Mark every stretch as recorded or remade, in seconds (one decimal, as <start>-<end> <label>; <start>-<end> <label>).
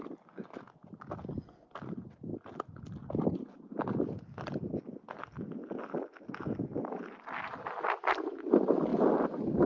0.0-9.7 recorded